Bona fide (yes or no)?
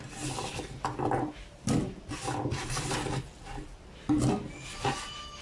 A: yes